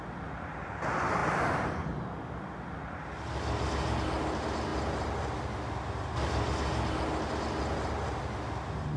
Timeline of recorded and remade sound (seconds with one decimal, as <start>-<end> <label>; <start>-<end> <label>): 0.0-9.0 recorded